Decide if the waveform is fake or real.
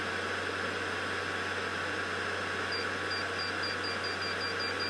real